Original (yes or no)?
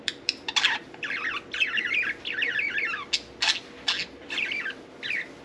yes